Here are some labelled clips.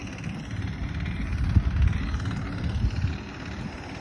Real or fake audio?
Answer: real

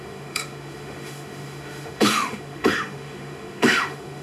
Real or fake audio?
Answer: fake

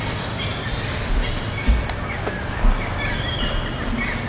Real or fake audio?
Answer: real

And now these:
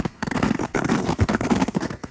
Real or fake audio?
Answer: fake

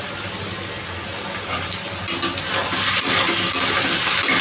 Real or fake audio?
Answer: real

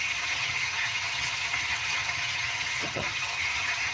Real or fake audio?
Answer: fake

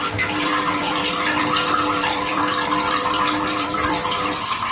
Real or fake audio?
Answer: fake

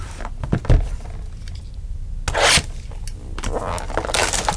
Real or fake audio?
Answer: real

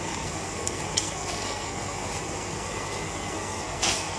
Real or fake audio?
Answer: fake